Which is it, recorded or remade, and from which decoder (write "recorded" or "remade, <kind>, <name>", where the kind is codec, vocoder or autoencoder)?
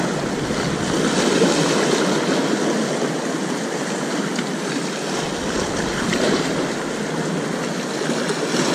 recorded